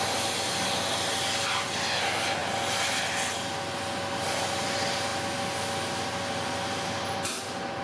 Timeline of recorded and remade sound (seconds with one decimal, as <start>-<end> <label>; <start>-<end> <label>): 0.0-7.8 recorded